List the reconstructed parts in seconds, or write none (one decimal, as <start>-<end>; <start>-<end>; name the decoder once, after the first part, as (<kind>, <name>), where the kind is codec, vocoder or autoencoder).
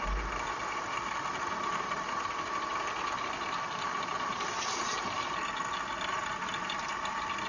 none